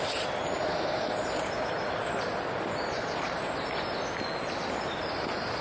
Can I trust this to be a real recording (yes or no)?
yes